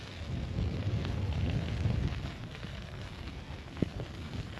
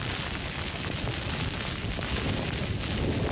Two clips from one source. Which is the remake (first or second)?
first